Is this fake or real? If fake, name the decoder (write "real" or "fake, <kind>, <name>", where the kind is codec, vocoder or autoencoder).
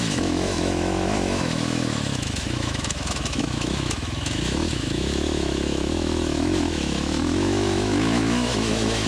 fake, autoencoder, DAC-VAE